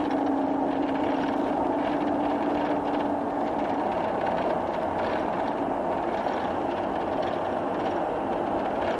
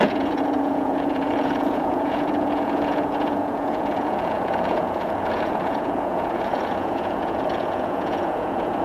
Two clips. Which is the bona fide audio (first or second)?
first